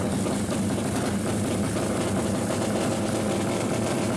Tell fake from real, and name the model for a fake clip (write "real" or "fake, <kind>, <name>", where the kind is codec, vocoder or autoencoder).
real